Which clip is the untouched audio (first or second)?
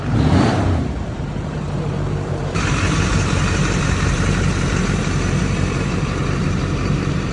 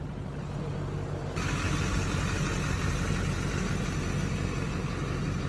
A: second